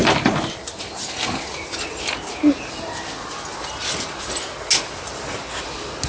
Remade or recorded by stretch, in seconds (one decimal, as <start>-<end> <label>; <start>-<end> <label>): 0.0-0.6 remade; 0.6-6.1 recorded